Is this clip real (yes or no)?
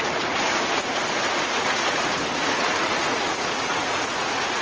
no